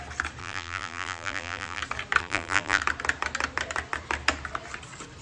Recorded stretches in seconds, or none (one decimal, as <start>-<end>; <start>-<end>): 0.0-0.4; 1.8-2.2; 2.8-5.2